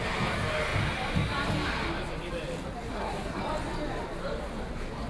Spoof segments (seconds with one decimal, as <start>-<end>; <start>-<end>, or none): 2.9-3.4